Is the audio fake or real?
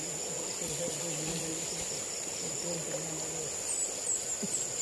real